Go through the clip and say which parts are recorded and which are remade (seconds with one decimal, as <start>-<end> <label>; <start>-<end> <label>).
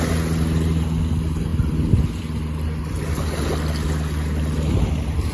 0.0-5.3 recorded